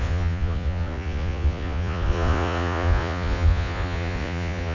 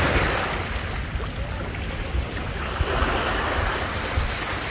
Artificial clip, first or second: first